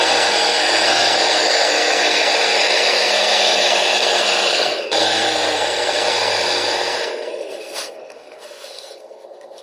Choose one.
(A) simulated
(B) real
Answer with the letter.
A